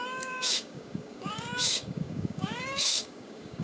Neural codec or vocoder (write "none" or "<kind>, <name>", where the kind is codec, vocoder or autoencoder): codec, DAC